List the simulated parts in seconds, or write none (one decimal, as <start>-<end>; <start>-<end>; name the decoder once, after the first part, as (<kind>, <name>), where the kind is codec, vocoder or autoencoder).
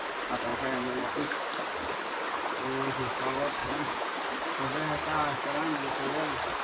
3.6-4.1 (vocoder, Vocos)